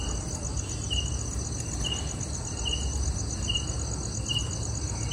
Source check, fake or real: real